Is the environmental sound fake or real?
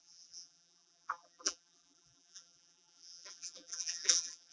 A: fake